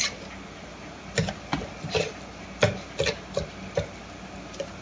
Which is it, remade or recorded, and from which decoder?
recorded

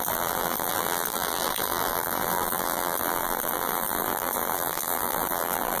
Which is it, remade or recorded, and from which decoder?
remade, vocoder, BigVGAN v2